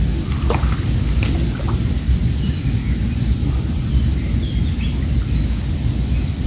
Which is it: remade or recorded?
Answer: recorded